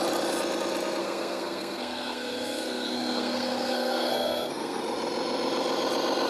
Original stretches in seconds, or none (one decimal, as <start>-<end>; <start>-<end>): 0.0-1.0; 4.8-6.3